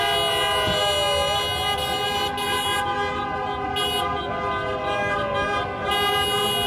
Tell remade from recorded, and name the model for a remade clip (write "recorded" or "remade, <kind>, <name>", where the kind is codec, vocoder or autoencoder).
recorded